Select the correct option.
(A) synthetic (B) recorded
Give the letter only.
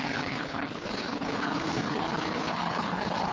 A